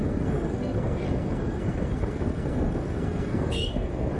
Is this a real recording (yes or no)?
no